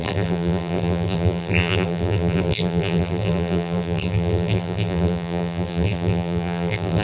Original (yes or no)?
no